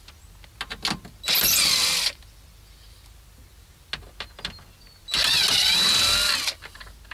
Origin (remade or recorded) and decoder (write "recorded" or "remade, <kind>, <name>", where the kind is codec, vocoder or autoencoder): recorded